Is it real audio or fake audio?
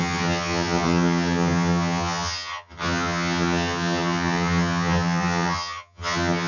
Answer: fake